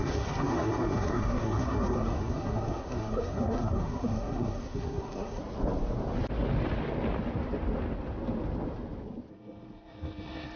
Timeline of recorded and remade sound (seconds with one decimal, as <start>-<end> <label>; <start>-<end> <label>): 0.0-5.4 remade; 5.4-9.3 recorded; 9.3-10.6 remade